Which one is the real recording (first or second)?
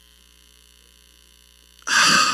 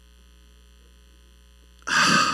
second